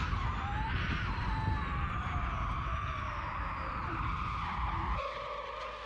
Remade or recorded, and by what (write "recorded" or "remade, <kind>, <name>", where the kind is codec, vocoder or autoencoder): recorded